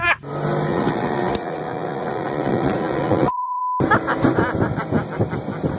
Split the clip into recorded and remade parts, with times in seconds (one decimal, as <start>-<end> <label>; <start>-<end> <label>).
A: 0.0-0.7 recorded; 0.7-3.6 remade; 3.6-5.8 recorded